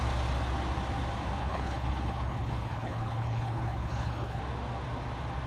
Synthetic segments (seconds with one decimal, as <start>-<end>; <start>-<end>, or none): 1.4-4.4